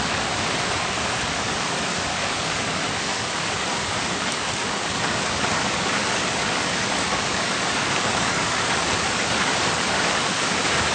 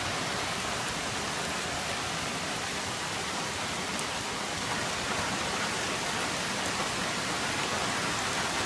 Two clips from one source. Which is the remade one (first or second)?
first